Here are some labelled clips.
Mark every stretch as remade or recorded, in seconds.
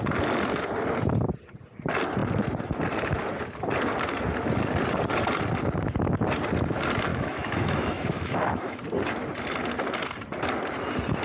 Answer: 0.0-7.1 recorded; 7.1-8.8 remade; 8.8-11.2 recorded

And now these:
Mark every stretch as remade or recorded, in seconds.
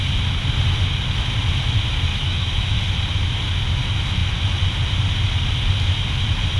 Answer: 0.0-2.1 recorded; 2.1-2.8 remade; 2.8-6.6 recorded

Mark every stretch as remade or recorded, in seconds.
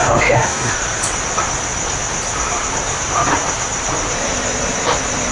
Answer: 0.0-0.7 remade; 0.7-5.3 recorded